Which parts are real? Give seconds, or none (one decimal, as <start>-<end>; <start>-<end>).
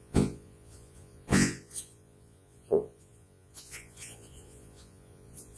none